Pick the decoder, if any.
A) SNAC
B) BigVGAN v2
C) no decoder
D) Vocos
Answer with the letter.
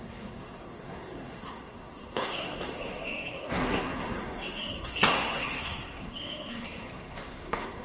A